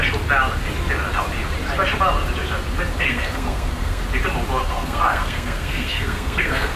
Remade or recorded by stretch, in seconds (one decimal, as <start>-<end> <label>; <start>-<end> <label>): 0.0-2.9 recorded; 2.9-4.0 remade; 4.0-4.6 recorded; 4.6-6.8 remade